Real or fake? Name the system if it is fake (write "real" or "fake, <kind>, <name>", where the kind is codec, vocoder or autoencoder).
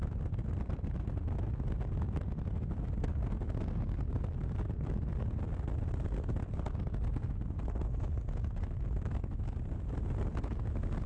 real